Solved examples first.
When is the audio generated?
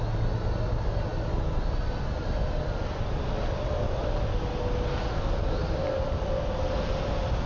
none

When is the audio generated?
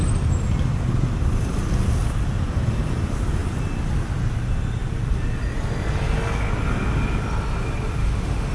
8.0-8.5 (autoencoder, DAC-VAE)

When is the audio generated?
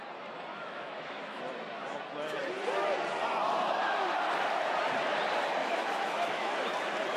0.5-1.4 (autoencoder, DAC-VAE); 5.6-6.7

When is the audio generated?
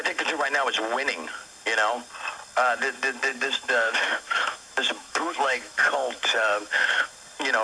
3.3-7.1 (autoencoder, DAC-VAE)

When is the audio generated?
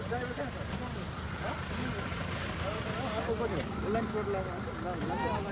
none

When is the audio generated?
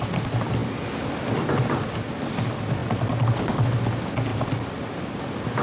none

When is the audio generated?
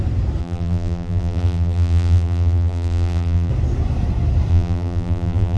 0.4-3.5 (vocoder, BigVGAN v2); 4.5-5.6